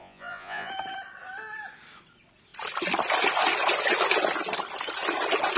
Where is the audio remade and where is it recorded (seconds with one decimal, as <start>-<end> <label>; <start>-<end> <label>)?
0.0-0.7 remade; 0.7-5.6 recorded